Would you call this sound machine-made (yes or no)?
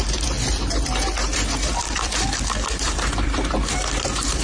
yes